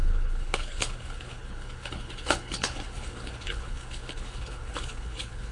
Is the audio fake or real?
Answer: fake